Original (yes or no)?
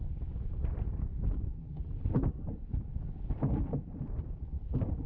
yes